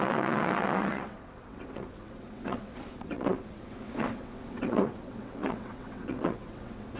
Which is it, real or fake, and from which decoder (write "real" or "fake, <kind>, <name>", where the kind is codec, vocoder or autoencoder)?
fake, vocoder, WaveNeXt